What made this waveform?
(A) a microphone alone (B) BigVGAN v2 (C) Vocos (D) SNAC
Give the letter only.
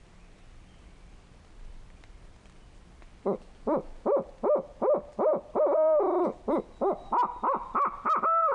B